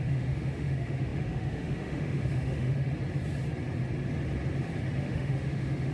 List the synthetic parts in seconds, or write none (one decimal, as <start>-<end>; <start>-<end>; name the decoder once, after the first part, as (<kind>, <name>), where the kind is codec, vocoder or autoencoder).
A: 0.0-2.9 (autoencoder, DAC-VAE); 5.0-5.9